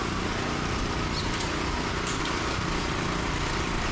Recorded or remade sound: recorded